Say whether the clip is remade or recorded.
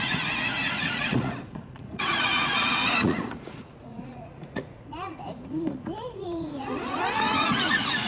remade